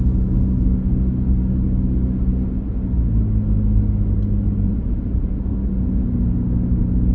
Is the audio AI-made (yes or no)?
no